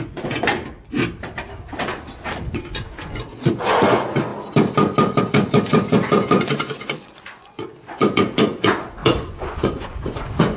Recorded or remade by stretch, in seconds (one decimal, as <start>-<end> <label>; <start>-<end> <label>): 0.0-0.6 remade; 0.6-2.5 recorded; 2.5-4.3 remade; 4.3-5.2 recorded; 5.2-10.6 remade